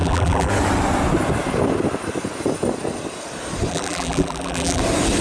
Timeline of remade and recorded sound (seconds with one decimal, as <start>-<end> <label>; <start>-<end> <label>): 0.0-0.5 remade; 0.5-3.7 recorded; 3.7-4.8 remade; 4.8-5.2 recorded